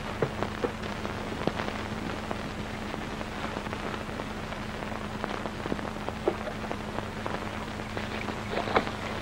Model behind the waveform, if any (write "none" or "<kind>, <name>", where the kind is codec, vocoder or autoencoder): none